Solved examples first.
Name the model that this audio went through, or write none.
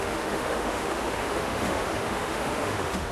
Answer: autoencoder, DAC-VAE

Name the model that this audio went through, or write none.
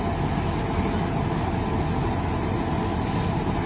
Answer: none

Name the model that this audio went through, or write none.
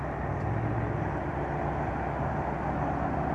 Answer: none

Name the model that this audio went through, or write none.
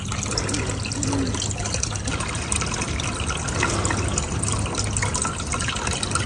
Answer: none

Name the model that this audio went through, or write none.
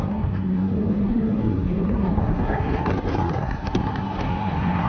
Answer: codec, SNAC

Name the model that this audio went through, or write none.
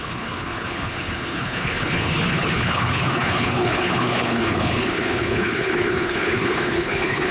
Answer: codec, HILCodec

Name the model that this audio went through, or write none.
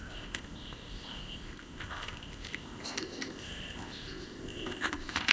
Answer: codec, ZipCodec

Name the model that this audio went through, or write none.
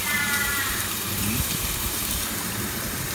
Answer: vocoder, BigVGAN v2